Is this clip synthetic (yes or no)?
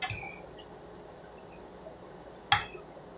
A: no